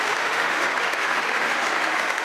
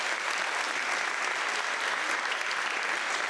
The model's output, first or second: first